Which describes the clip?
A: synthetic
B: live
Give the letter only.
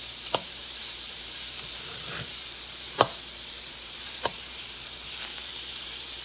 A